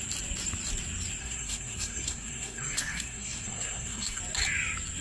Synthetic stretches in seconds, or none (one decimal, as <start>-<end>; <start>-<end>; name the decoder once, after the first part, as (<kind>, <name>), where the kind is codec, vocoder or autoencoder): 1.2-4.2 (codec, SNAC)